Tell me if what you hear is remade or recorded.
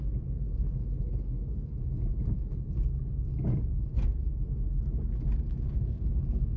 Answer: recorded